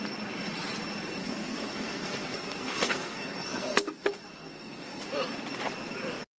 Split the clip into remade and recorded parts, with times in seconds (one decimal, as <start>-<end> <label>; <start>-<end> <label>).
0.0-1.2 recorded; 1.2-5.0 remade; 5.0-6.4 recorded